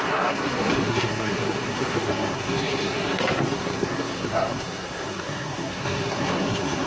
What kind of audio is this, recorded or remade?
remade